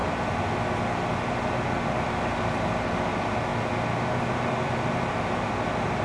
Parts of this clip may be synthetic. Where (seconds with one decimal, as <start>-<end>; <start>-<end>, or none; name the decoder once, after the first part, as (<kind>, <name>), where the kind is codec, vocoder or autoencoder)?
2.0-3.5 (vocoder, BigVGAN v2); 4.2-6.0